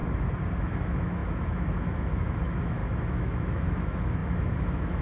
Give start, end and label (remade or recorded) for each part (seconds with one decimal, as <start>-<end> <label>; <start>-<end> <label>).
0.0-0.6 recorded; 0.6-5.0 remade